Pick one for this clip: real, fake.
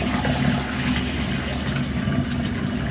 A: real